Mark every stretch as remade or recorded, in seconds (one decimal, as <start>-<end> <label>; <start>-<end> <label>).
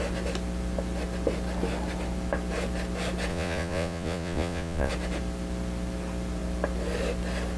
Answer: 0.0-3.3 recorded; 3.3-4.9 remade; 4.9-7.6 recorded